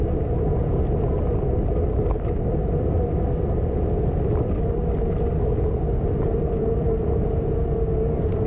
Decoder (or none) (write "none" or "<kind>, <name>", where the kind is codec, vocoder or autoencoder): none